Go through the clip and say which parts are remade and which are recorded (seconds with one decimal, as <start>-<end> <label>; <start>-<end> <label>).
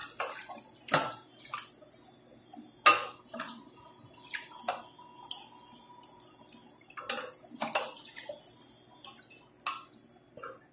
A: 0.0-10.7 recorded